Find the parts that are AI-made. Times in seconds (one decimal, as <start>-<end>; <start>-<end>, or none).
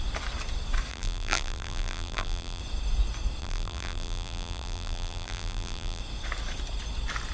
0.9-2.6; 3.4-6.0